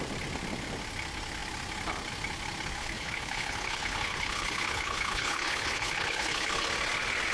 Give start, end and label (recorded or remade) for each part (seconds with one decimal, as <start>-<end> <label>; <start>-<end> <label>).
0.0-2.8 recorded; 2.8-6.5 remade; 6.5-7.3 recorded